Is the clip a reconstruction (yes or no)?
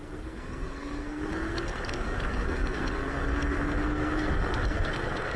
yes